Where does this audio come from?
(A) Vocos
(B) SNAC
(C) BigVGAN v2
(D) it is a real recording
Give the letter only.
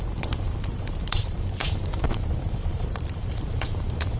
C